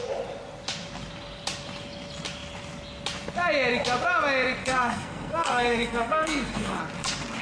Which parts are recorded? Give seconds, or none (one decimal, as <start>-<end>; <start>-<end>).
0.0-4.6; 6.8-7.4